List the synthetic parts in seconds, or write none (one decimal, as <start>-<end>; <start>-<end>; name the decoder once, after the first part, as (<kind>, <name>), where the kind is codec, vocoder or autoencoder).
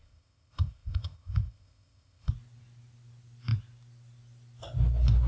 0.0-2.3 (codec, ZipCodec)